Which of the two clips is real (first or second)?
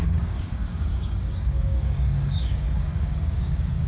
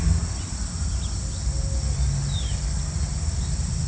second